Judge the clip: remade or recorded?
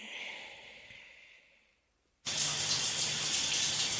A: recorded